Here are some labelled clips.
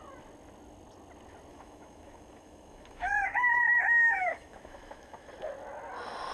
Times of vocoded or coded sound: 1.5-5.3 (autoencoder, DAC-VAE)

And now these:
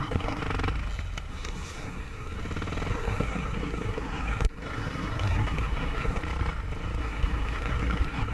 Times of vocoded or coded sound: 0.0-0.4 (codec, SNAC); 1.3-2.4; 2.9-6.2; 7.0-8.3

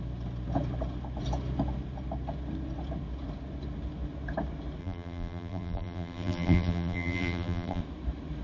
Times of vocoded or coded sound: 4.8-7.8 (vocoder, BigVGAN v2)

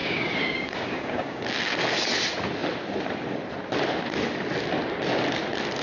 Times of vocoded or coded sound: 0.0-1.4 (codec, DAC)

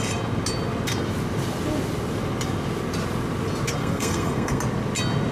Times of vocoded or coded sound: 3.8-4.6 (codec, SNAC)

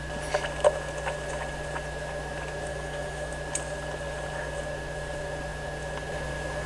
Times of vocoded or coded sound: 2.7-3.3 (autoencoder, DAC-VAE)

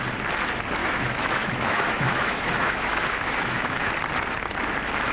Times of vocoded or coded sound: 0.8-3.9 (autoencoder, DAC-VAE)

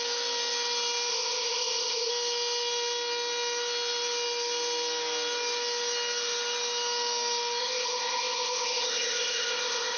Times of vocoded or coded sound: 1.1-2.1 (codec, ZipCodec); 7.6-10.0